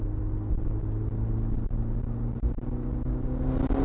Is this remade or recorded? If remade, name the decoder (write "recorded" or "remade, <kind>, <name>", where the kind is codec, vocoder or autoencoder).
recorded